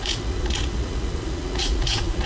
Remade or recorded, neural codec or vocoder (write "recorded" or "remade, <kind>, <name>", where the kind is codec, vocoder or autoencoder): remade, vocoder, Vocos